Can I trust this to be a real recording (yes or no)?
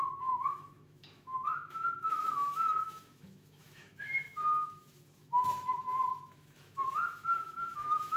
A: no